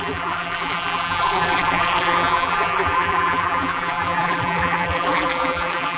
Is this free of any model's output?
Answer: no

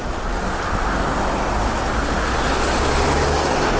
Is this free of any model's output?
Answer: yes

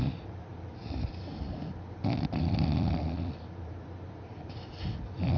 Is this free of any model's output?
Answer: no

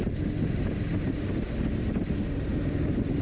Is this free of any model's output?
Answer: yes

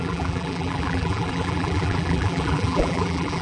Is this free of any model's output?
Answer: no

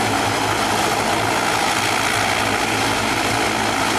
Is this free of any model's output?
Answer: yes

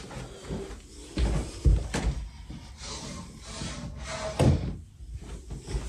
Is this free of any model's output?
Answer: yes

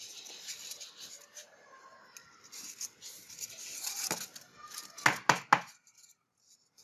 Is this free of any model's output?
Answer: yes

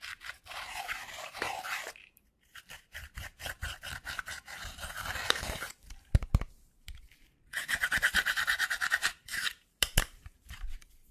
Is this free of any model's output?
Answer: no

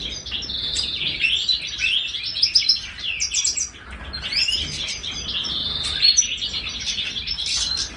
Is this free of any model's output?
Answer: yes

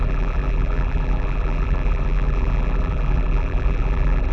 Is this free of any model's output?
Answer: no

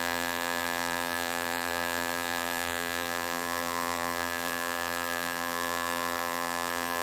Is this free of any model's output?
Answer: no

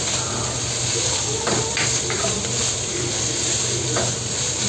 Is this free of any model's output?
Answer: yes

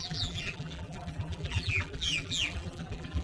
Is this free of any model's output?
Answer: no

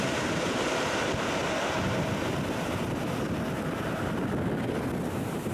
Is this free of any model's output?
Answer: no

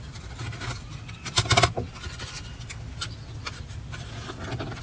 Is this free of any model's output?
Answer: yes